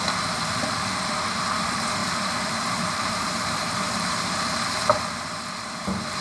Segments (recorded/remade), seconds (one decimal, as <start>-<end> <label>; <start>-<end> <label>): 0.0-2.0 recorded; 2.0-4.5 remade; 4.5-6.2 recorded